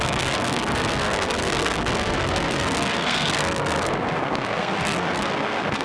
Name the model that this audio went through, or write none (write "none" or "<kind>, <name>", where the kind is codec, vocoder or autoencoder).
codec, SNAC